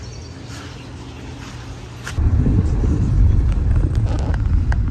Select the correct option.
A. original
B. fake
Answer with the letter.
A